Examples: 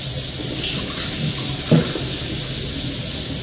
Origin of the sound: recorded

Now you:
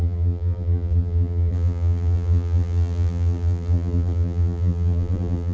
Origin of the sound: remade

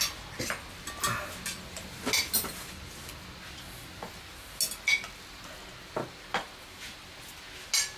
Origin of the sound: recorded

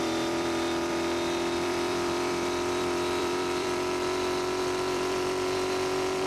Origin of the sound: remade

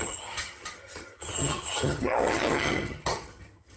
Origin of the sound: remade